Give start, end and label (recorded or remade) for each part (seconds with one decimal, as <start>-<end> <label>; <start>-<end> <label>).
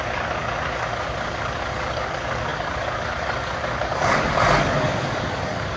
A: 0.0-5.8 remade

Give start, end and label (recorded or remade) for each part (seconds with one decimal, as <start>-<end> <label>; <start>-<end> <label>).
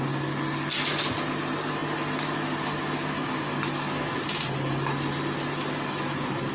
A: 0.0-6.5 recorded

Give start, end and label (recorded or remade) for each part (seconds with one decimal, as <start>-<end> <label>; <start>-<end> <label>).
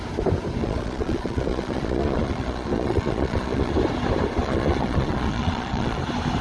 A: 0.0-0.6 recorded; 0.6-3.7 remade; 3.7-4.4 recorded; 4.4-6.0 remade; 6.0-6.4 recorded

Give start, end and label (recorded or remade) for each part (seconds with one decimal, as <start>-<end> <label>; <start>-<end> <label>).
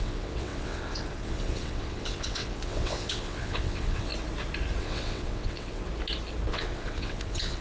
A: 0.0-4.1 remade; 4.1-4.8 recorded; 4.8-5.8 remade; 5.8-6.5 recorded; 6.5-7.6 remade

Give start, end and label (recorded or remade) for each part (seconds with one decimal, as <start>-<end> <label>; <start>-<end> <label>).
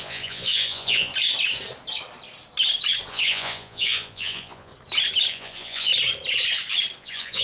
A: 0.0-1.1 remade; 1.1-3.1 recorded; 3.1-4.7 remade; 4.7-5.3 recorded; 5.3-5.9 remade; 5.9-7.0 recorded; 7.0-7.4 remade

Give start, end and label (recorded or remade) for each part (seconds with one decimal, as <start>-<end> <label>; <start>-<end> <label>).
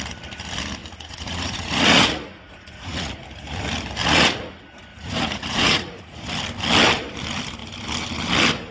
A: 0.0-0.8 recorded; 0.8-3.1 remade; 3.1-4.0 recorded; 4.0-4.5 remade; 4.5-4.9 recorded; 4.9-6.2 remade; 6.2-8.7 recorded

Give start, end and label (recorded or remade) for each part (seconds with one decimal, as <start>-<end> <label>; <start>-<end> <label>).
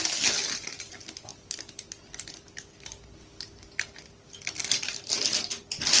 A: 0.0-6.0 recorded